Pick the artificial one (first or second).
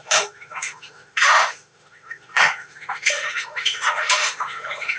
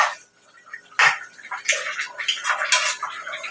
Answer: first